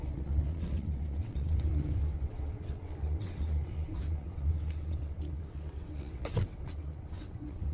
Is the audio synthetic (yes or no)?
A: yes